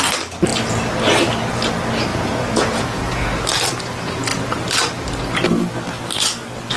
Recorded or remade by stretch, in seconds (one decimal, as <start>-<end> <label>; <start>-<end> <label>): 0.0-2.1 recorded; 2.1-3.3 remade; 3.3-6.8 recorded